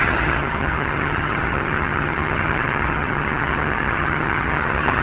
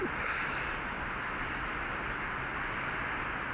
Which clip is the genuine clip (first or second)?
second